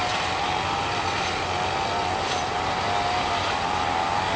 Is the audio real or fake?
real